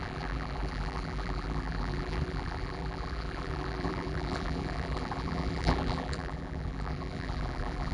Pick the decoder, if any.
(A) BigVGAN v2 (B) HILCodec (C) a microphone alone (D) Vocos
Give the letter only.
A